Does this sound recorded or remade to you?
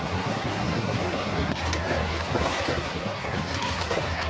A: remade